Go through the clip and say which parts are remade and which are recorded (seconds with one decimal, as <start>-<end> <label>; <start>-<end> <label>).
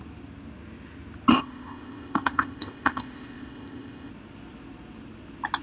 0.0-1.3 recorded; 1.3-4.1 remade; 4.1-5.6 recorded